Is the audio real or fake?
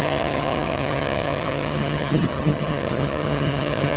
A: fake